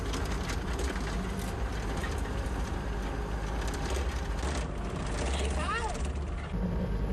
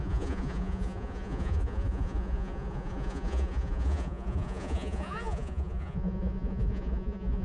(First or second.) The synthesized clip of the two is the second